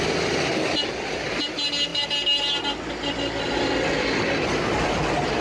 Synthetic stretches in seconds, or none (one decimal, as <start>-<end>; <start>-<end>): none